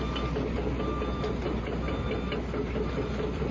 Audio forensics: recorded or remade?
recorded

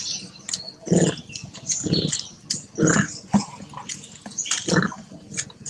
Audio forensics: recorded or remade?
recorded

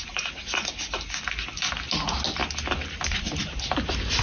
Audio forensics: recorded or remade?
recorded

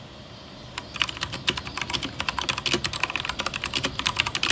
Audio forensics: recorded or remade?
recorded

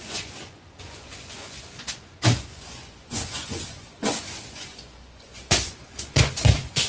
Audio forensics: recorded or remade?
remade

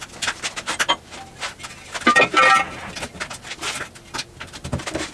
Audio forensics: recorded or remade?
recorded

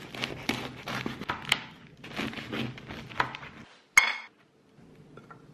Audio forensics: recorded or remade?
recorded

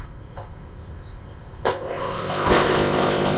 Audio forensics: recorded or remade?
remade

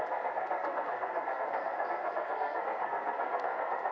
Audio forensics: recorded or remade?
remade